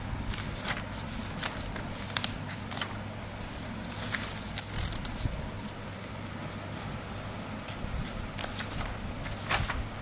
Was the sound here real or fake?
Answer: real